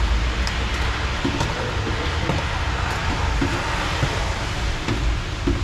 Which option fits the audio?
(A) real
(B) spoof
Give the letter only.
A